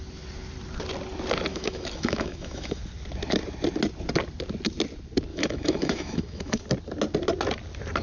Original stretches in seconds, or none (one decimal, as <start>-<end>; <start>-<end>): 0.0-1.5; 2.8-5.3; 6.6-8.0